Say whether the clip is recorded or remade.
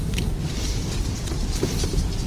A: recorded